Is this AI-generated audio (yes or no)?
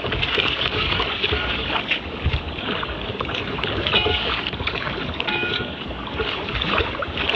yes